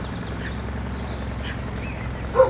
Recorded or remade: recorded